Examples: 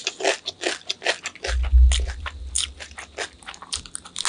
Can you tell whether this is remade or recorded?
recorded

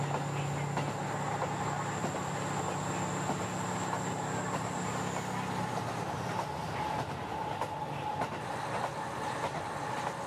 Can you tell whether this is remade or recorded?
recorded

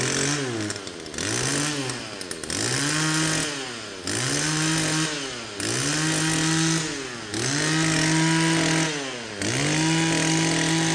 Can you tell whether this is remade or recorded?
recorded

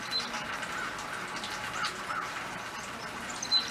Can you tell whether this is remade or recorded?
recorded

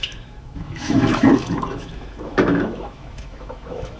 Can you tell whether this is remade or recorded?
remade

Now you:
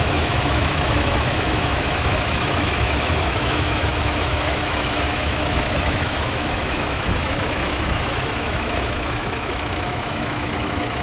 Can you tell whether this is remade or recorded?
remade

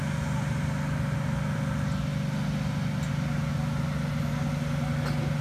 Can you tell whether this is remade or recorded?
recorded